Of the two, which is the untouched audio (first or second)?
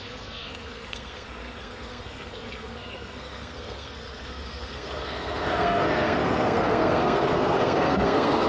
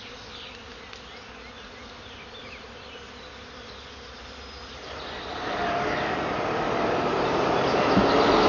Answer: second